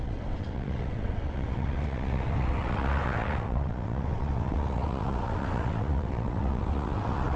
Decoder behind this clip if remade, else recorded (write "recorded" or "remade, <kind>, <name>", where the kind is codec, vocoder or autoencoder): remade, vocoder, WaveNeXt